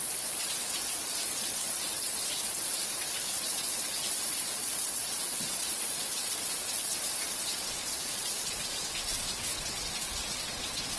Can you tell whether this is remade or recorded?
remade